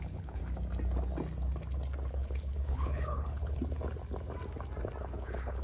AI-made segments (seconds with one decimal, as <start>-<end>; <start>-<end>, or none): 0.0-0.4; 2.1-3.6; 5.0-5.6